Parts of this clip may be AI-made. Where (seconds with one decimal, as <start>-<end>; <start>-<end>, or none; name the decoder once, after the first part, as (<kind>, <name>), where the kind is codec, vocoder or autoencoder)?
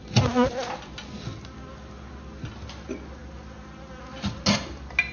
none